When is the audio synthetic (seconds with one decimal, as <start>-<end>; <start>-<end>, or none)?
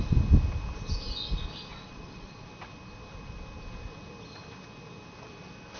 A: 1.7-2.5